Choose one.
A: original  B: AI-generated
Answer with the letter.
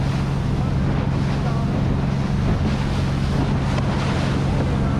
A